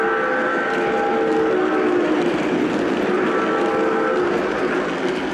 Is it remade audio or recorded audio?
recorded